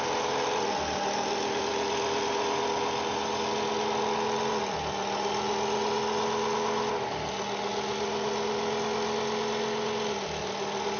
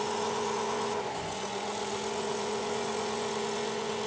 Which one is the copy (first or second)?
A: second